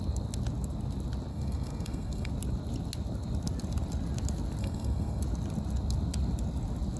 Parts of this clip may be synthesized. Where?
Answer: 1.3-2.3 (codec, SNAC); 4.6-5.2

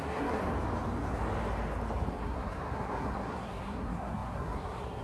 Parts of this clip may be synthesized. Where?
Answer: 0.0-0.4 (codec, SNAC); 2.1-5.0

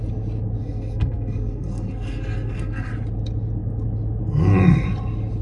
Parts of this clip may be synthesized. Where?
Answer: 0.6-2.9 (codec, SNAC)

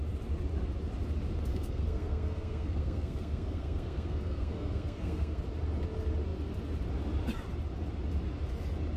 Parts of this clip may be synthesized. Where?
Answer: 1.5-5.4 (codec, SNAC)

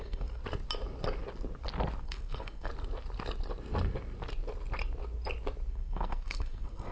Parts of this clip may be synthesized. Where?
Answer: 0.0-0.4 (codec, SNAC); 2.0-2.7; 5.7-6.9